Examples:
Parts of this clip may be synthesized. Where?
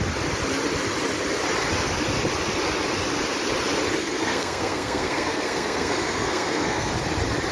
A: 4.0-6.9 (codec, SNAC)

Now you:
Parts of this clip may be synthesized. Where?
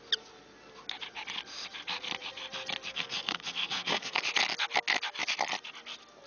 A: 2.9-4.2 (codec, SNAC)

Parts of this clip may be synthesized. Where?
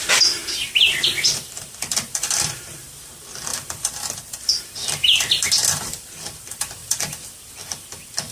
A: 0.0-8.3 (vocoder, BigVGAN v2)